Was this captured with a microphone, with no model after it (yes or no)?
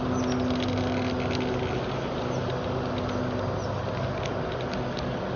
yes